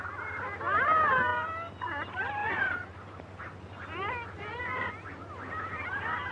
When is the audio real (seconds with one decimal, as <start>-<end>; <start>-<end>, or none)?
0.0-2.4; 3.4-4.5; 5.2-6.3